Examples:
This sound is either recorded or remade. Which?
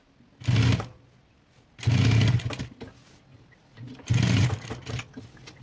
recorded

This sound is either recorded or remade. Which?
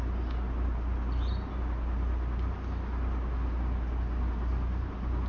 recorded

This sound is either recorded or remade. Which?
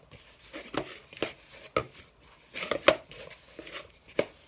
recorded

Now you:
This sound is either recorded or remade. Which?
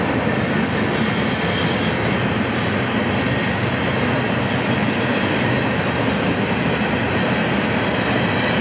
recorded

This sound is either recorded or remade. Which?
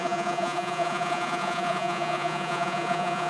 remade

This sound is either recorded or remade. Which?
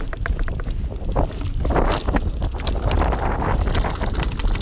recorded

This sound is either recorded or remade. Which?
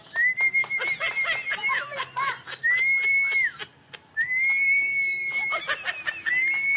recorded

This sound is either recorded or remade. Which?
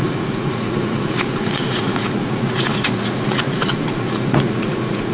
remade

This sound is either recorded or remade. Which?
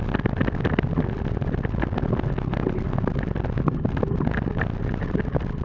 recorded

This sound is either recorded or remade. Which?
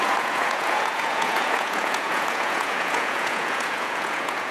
remade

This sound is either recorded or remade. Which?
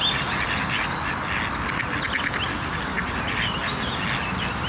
recorded